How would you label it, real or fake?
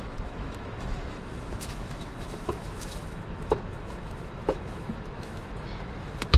fake